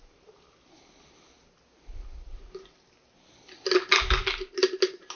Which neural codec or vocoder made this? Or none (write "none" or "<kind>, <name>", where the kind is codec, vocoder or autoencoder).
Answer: none